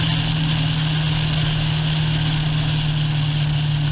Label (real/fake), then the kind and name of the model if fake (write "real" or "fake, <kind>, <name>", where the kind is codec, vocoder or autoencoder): real